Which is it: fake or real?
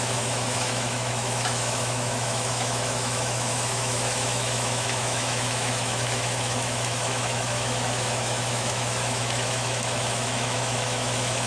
fake